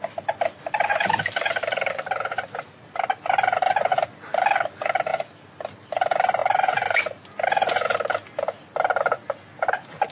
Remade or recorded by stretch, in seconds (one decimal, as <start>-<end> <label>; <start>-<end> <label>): 0.0-10.1 recorded